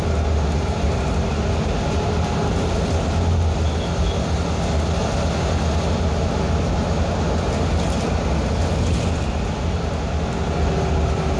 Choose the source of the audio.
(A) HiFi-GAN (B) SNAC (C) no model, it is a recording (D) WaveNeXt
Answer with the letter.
C